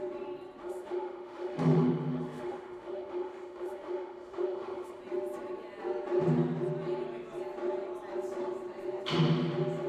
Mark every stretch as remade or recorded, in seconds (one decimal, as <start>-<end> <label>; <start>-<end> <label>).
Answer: 0.0-0.6 recorded; 0.6-5.0 remade; 5.0-9.9 recorded